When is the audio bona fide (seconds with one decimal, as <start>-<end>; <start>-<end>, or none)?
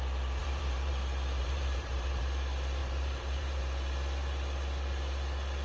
0.0-0.4; 0.9-1.4; 2.2-2.8; 3.6-5.6